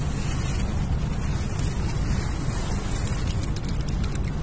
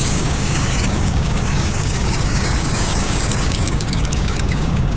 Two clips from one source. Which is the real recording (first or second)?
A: first